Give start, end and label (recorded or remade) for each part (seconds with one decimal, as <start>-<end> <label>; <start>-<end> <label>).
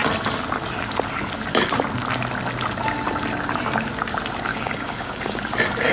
0.0-4.5 recorded; 4.5-5.4 remade; 5.4-5.9 recorded